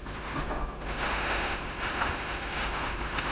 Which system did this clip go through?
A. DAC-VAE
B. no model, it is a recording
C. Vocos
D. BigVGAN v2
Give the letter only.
A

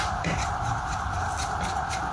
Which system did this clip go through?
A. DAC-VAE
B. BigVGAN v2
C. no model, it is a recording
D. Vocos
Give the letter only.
C